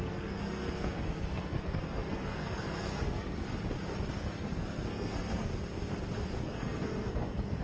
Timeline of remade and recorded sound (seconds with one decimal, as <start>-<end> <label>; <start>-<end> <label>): 0.0-3.5 remade; 3.5-4.1 recorded; 4.1-5.5 remade; 5.5-6.4 recorded; 6.4-7.6 remade